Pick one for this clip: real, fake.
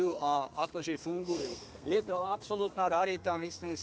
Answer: fake